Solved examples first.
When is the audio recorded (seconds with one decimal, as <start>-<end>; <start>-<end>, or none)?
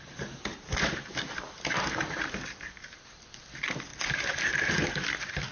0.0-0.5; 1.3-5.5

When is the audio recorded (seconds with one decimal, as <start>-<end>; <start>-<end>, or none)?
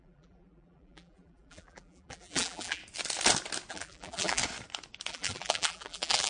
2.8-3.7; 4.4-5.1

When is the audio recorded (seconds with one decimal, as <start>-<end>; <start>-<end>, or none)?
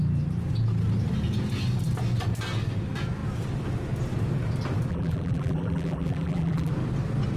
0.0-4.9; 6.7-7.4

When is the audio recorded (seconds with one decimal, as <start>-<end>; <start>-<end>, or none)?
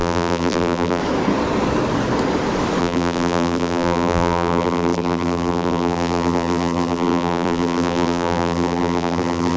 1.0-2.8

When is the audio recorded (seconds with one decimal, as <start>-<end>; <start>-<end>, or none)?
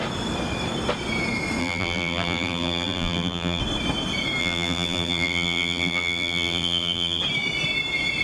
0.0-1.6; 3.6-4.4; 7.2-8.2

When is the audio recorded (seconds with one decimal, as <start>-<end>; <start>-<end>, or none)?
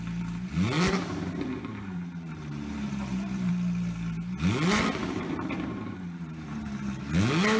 0.0-1.7; 3.5-5.0; 7.0-7.6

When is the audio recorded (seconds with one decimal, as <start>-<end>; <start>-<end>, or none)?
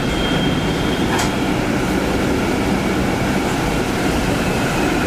0.6-3.7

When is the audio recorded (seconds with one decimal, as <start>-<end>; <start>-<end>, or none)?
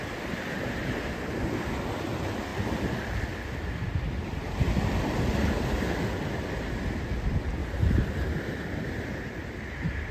0.0-7.6; 8.3-10.1